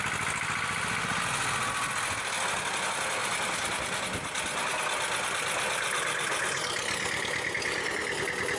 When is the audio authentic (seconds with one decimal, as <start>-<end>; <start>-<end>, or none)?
0.0-8.6